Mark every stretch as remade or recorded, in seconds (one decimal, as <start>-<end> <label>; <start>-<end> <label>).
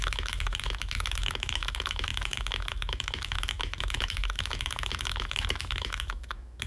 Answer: 0.0-6.7 remade